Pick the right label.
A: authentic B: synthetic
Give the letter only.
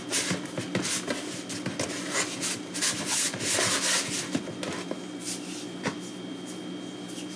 A